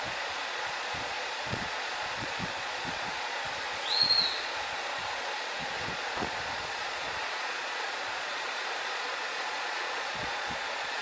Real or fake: fake